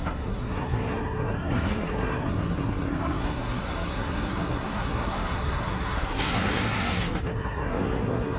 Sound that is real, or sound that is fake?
fake